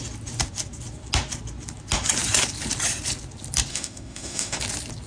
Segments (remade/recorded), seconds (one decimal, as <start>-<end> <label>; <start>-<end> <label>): 0.0-3.7 recorded; 3.7-4.6 remade; 4.6-5.1 recorded